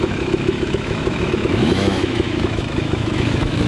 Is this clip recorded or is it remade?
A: remade